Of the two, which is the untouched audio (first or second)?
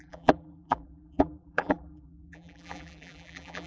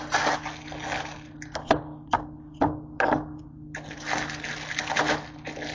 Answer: second